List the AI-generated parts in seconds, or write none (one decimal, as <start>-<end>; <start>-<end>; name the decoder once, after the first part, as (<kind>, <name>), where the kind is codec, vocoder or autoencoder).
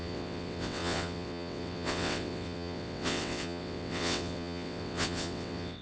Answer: 0.0-5.8 (vocoder, WaveNeXt)